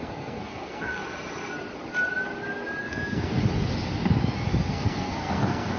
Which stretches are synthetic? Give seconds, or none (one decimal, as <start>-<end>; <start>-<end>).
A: 0.0-1.0; 2.8-3.4; 4.7-5.8

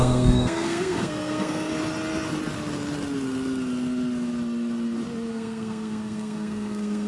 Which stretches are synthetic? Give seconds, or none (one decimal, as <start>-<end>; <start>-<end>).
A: 0.0-1.7; 5.3-7.1